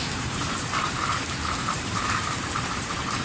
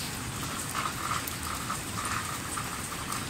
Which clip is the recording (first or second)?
second